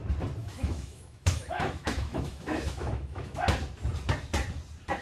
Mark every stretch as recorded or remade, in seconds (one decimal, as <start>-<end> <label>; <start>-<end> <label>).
0.0-0.4 recorded; 0.4-3.4 remade; 3.4-5.0 recorded